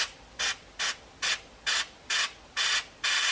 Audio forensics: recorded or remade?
recorded